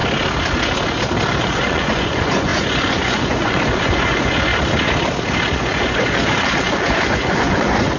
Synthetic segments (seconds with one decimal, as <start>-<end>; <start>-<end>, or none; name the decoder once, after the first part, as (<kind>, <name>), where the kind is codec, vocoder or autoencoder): 1.4-4.5 (vocoder, Vocos); 5.6-8.0